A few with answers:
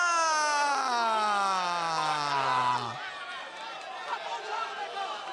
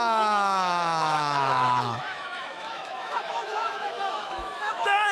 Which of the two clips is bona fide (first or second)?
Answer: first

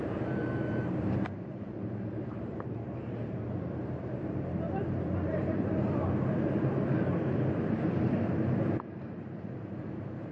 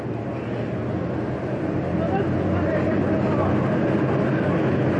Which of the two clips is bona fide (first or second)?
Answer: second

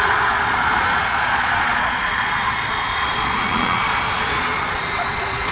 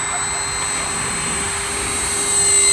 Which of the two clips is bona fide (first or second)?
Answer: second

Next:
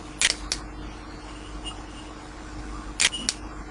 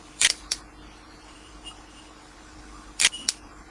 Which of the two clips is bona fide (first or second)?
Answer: first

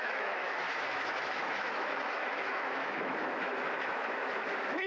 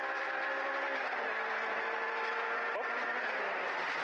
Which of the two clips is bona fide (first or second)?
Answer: second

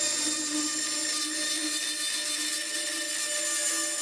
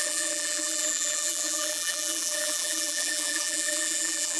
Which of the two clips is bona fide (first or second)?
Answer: first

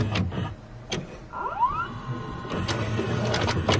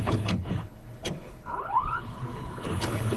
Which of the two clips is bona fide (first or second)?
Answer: first